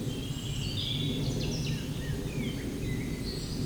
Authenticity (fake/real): real